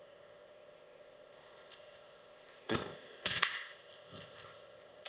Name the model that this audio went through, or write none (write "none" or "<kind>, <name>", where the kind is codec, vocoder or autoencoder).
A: codec, ZipCodec